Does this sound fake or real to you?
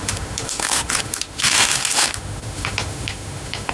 fake